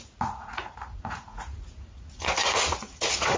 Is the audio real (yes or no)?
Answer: no